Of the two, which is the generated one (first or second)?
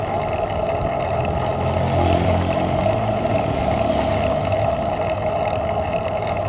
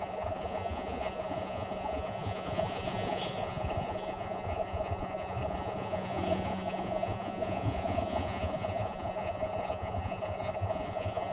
second